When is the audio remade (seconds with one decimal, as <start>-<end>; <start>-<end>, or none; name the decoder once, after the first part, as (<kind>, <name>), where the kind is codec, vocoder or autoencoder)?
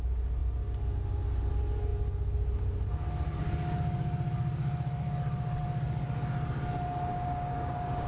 7.1-8.1 (codec, DAC)